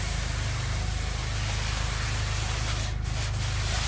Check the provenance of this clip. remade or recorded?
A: recorded